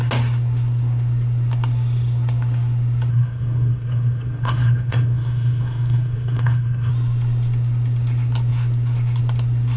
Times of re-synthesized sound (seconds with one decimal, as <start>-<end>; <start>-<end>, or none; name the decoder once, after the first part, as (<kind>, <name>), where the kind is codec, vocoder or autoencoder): 3.1-6.9 (codec, SNAC)